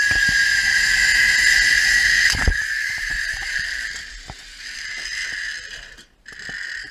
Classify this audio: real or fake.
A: real